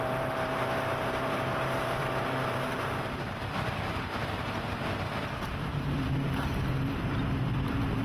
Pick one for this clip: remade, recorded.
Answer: remade